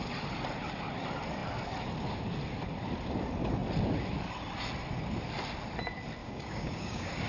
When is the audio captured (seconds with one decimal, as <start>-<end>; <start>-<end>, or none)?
0.0-6.2